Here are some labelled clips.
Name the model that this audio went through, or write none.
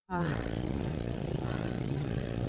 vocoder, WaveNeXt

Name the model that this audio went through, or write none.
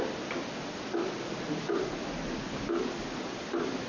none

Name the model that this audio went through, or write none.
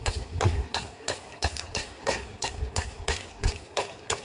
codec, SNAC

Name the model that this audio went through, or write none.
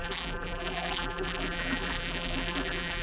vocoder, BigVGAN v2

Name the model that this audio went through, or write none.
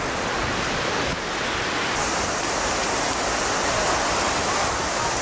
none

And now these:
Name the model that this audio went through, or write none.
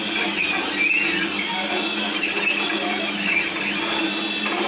none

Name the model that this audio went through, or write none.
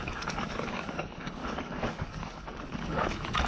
codec, DAC